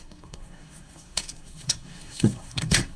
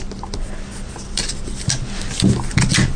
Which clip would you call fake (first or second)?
first